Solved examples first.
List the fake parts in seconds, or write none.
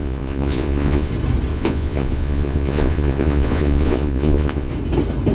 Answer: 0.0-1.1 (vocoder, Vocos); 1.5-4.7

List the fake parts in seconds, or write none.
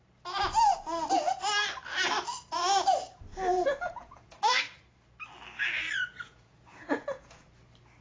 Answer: 3.3-4.6 (vocoder, Vocos); 6.1-7.4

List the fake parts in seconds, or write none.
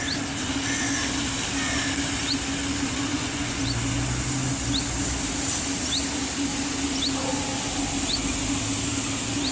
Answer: 3.1-3.6 (vocoder, Vocos)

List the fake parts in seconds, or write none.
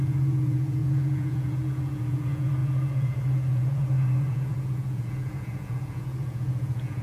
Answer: 0.0-7.0 (vocoder, Vocos)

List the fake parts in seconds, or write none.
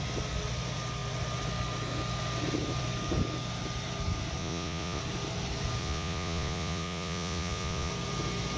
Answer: 4.4-5.0 (vocoder, Vocos); 5.8-7.9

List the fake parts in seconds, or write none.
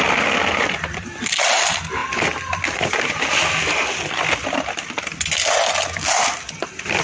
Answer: none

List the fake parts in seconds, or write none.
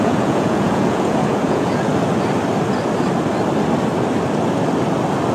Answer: 0.0-1.9 (vocoder, Vocos)